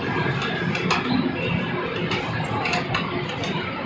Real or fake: real